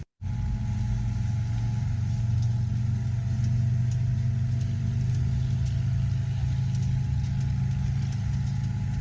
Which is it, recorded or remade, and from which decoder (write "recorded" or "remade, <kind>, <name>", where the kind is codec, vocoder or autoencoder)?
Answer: recorded